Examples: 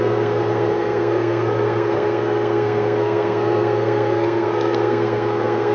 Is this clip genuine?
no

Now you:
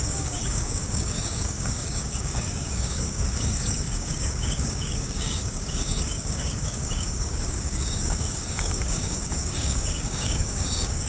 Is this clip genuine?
no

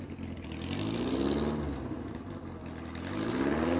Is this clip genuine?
yes